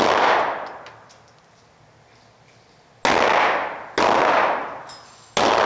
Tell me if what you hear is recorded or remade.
recorded